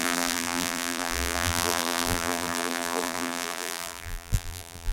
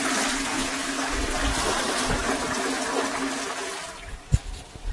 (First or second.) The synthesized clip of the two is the first